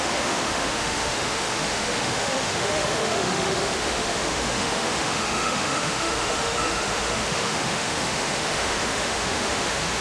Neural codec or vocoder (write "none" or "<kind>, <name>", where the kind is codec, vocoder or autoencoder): autoencoder, DAC-VAE